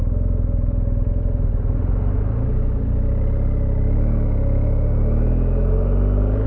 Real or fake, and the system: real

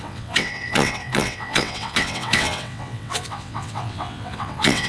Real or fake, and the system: fake, vocoder, WaveNeXt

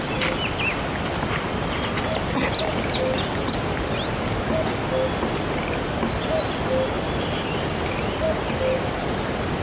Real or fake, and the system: real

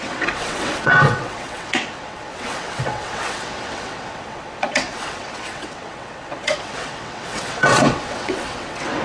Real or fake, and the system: fake, vocoder, WaveNeXt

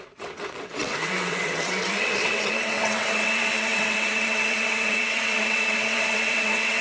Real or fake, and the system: fake, vocoder, WaveNeXt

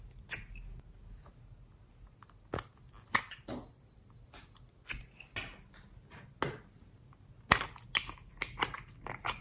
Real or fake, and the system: real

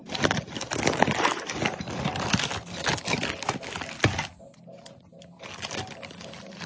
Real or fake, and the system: real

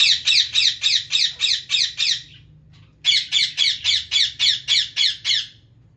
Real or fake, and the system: real